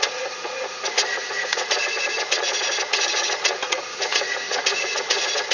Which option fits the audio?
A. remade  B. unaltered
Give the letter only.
A